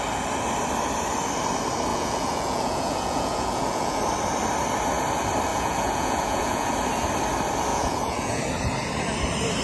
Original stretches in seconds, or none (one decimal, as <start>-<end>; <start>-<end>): 0.0-1.9; 4.0-5.5; 6.7-7.7; 8.4-9.6

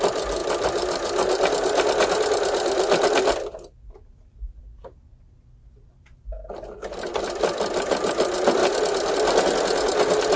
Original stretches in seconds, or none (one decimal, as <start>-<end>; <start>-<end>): 0.0-0.4; 4.6-7.1; 7.9-10.4